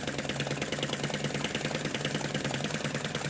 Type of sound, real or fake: real